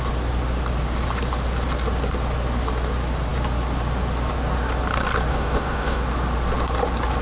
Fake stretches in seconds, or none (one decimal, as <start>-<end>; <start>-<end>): 5.3-6.0